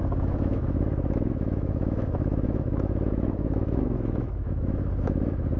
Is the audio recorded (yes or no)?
no